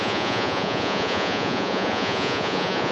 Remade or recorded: remade